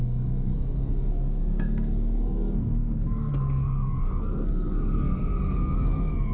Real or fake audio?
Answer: fake